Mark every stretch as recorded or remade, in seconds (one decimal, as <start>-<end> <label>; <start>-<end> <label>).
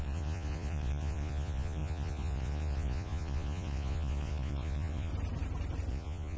0.0-5.1 remade; 5.1-5.9 recorded; 5.9-6.4 remade